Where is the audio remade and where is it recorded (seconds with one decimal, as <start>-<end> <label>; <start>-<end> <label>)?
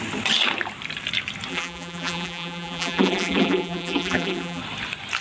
0.0-1.5 recorded; 1.5-4.6 remade; 4.6-5.2 recorded